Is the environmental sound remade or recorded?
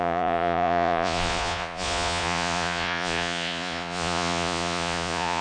remade